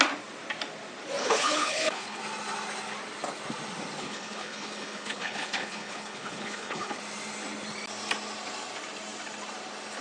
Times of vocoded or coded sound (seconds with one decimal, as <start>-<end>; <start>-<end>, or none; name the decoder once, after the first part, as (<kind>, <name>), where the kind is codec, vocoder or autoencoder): 1.2-2.2 (codec, HILCodec); 4.0-7.0